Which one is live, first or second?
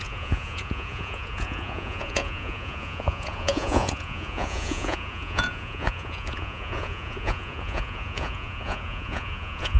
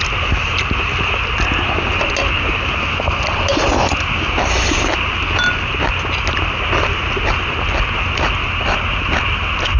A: second